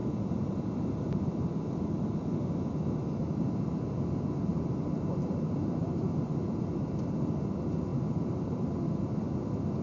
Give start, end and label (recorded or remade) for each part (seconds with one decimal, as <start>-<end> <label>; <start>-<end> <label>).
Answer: 0.0-1.3 remade; 1.3-4.5 recorded; 4.5-6.7 remade; 6.7-7.9 recorded; 7.9-8.8 remade; 8.8-9.8 recorded